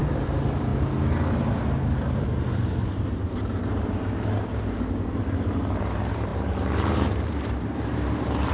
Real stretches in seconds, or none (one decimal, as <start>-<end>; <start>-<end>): 0.7-2.2